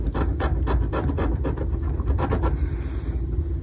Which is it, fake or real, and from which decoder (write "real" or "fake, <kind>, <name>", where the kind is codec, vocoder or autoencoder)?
real